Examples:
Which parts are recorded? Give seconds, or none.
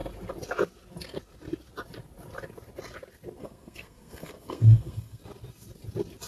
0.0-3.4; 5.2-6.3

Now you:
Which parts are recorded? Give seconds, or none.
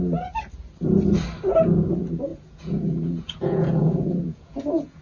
0.0-2.3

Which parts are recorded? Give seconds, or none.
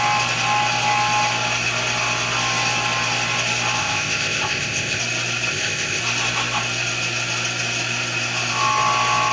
0.0-3.8; 5.0-5.5; 6.0-9.3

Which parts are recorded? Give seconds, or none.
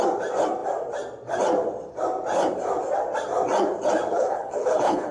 0.0-4.1